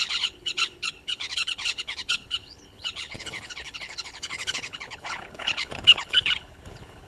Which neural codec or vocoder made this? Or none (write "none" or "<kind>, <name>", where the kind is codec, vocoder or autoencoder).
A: codec, HILCodec